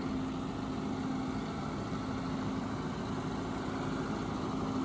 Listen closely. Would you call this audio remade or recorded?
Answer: recorded